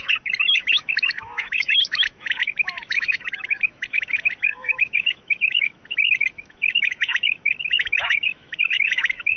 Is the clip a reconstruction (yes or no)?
yes